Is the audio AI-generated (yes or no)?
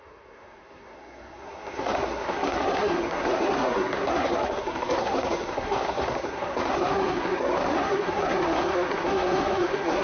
yes